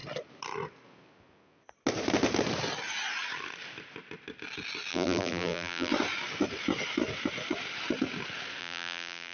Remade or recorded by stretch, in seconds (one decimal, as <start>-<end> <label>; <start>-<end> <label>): 0.0-4.9 recorded; 4.9-5.9 remade; 5.9-8.6 recorded; 8.6-9.3 remade